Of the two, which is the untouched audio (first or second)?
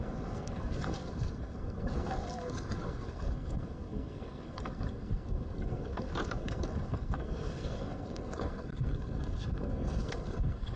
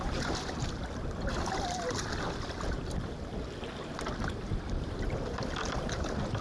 second